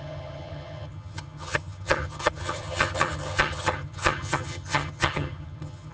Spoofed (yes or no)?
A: yes